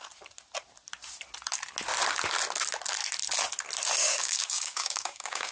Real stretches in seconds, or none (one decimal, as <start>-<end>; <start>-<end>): 0.0-4.0